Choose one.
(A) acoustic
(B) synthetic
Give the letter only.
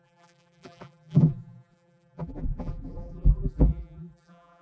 B